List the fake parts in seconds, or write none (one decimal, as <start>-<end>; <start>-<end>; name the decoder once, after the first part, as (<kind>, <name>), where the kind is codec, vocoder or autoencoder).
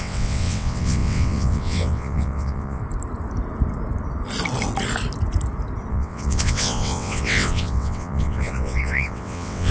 0.0-2.8 (vocoder, WaveNeXt); 5.9-9.7